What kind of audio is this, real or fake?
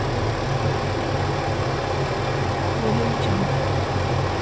real